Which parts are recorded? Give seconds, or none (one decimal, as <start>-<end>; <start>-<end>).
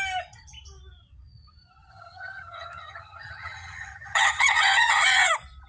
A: 0.0-1.9; 5.3-5.7